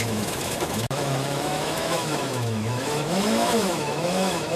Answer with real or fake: fake